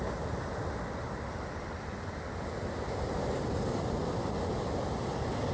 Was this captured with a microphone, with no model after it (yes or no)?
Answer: yes